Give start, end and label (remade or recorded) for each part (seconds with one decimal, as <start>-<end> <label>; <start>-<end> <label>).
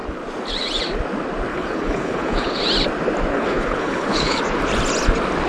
0.0-1.5 recorded; 1.5-2.6 remade; 2.6-3.3 recorded; 3.3-4.4 remade; 4.4-5.5 recorded